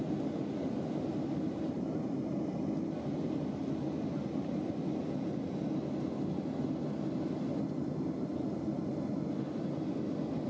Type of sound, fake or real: real